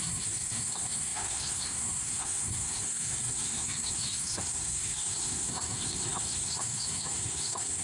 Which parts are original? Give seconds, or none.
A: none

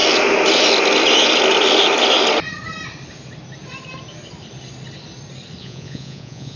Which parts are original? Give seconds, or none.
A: 0.0-5.6

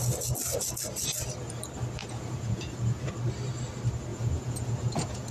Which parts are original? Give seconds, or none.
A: 0.0-2.0; 3.1-4.1

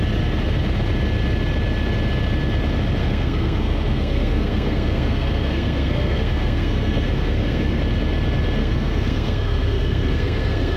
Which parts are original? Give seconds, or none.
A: 0.0-3.0; 7.8-8.6

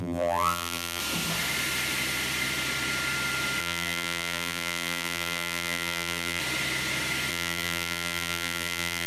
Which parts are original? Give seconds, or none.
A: 1.0-3.6; 6.4-7.3

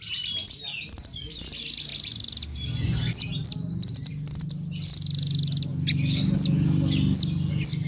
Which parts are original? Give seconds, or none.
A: 0.0-7.9

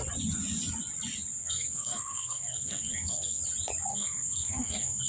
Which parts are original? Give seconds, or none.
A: 0.0-1.4; 3.4-3.9

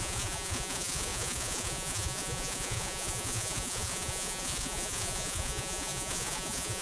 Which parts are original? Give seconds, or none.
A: none